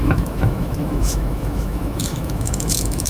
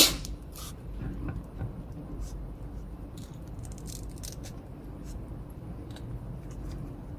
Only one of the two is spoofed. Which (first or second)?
first